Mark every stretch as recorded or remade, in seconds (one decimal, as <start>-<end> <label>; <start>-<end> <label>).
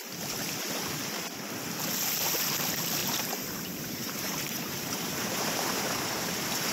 0.0-3.0 recorded; 3.0-6.3 remade; 6.3-6.7 recorded